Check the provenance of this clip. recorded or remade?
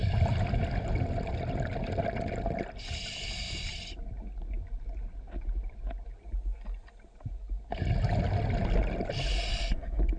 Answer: recorded